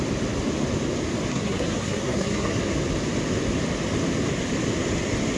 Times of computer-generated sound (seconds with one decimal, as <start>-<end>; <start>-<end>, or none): 1.3-2.6

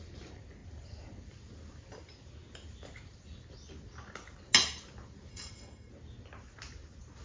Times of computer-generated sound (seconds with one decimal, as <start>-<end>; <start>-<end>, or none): 5.3-5.9